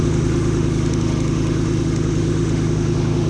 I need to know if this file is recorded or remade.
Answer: remade